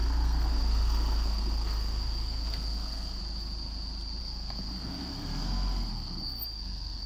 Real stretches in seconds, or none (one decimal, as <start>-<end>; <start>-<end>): 3.2-4.2